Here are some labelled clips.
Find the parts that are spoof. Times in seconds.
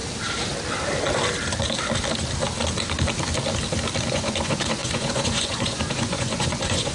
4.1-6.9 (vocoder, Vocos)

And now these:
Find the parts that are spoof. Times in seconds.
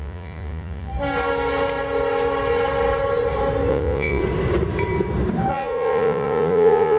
0.0-0.9 (vocoder, Vocos); 3.7-4.2; 5.5-7.0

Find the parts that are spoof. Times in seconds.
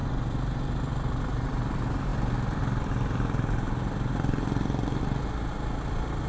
none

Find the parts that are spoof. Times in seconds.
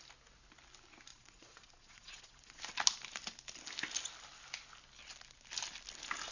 1.1-2.6 (vocoder, Vocos)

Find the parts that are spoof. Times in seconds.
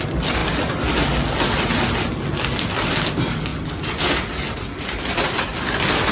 none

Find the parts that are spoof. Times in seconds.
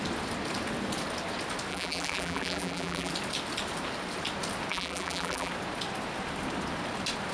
1.7-3.1 (vocoder, BigVGAN v2); 4.7-5.5